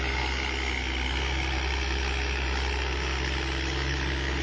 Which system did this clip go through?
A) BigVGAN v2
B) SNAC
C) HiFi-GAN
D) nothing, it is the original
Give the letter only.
D